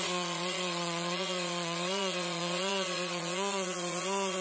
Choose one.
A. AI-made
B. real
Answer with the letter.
A